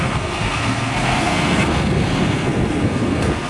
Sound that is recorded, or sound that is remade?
remade